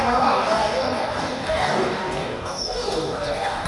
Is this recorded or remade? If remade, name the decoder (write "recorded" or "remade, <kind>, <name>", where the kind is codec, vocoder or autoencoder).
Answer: remade, codec, DAC